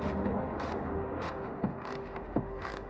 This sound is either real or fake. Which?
fake